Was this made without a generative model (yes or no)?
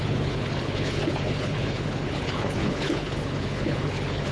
no